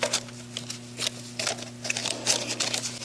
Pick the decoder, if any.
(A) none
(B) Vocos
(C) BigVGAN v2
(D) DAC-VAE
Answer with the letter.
A